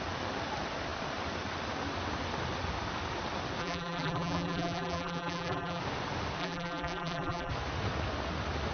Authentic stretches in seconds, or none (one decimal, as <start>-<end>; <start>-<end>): 0.0-3.6; 5.8-6.4; 7.5-8.7